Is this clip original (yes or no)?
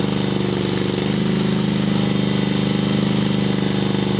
yes